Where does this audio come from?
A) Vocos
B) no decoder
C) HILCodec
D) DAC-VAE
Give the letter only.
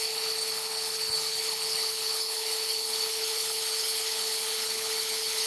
C